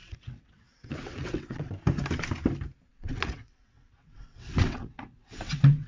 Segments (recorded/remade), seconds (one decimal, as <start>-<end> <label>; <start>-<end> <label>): 0.0-1.7 remade; 1.7-2.9 recorded; 2.9-5.9 remade